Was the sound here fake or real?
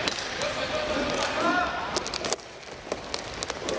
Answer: real